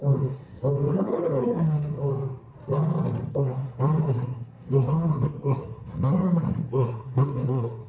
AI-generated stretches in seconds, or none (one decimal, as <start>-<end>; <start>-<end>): 0.0-2.1; 3.3-7.9